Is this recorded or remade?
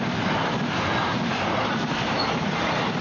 recorded